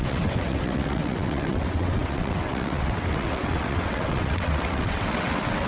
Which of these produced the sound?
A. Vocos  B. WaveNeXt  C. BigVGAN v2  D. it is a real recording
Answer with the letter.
B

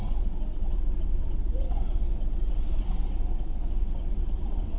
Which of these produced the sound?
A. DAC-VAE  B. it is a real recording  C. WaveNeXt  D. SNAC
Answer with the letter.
C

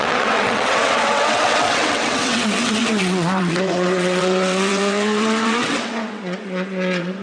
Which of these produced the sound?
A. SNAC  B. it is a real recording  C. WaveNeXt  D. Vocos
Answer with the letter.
C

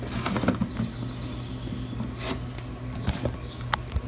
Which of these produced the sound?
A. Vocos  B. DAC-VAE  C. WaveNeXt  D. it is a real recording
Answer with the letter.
D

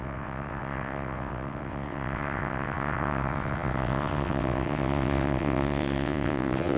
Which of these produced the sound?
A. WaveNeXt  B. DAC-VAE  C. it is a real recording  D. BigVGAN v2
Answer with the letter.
A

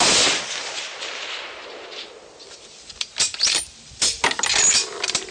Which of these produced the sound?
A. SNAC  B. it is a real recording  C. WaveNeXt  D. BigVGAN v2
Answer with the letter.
B